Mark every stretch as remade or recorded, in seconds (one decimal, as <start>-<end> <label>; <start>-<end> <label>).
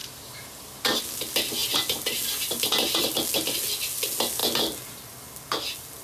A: 0.0-1.0 remade; 1.0-6.0 recorded